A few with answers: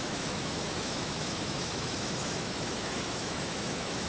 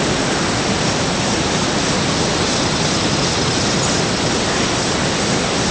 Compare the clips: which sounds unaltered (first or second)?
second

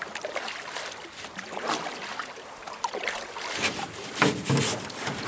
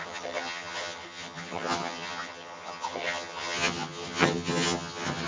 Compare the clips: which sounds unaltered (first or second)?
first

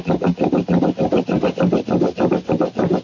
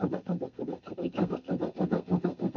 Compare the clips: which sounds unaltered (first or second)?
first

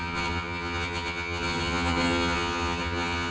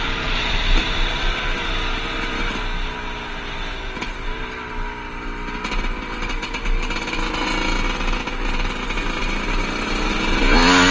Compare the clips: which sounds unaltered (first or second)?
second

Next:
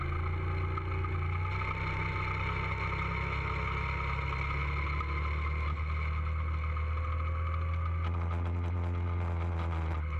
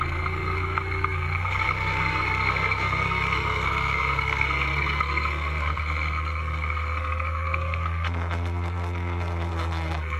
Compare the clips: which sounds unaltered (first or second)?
first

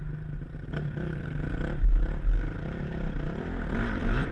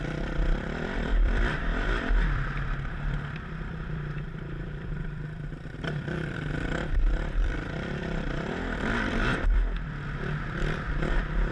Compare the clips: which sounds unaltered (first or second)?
first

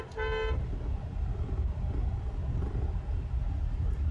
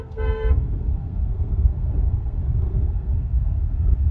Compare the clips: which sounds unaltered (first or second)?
first